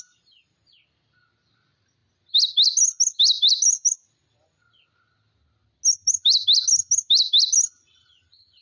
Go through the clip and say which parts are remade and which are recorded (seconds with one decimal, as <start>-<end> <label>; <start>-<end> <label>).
0.0-8.6 recorded